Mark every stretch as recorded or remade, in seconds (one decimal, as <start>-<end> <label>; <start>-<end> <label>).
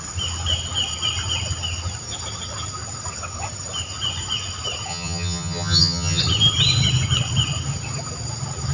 0.0-4.9 recorded; 4.9-6.2 remade; 6.2-8.7 recorded